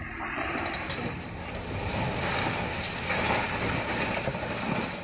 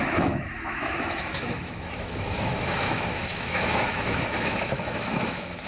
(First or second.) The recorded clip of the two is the first